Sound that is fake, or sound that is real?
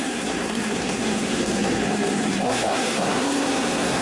fake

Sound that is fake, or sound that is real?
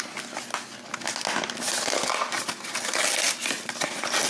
real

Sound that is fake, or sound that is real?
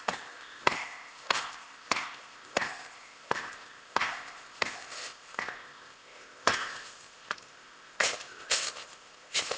fake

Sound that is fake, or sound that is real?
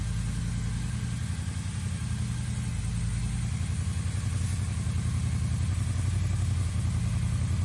real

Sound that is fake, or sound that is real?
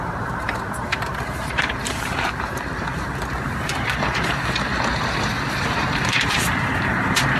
fake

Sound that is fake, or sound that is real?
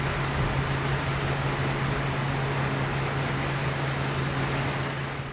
real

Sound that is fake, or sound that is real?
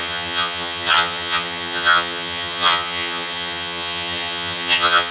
fake